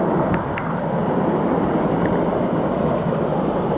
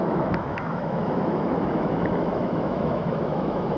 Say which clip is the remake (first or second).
second